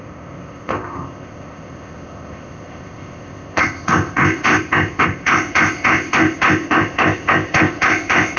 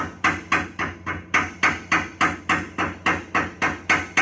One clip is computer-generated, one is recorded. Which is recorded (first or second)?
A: second